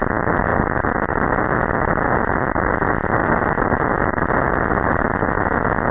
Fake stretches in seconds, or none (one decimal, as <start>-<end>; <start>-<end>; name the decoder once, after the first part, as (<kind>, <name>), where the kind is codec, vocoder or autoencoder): none